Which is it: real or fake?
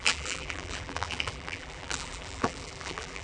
fake